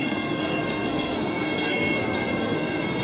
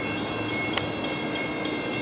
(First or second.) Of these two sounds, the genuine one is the second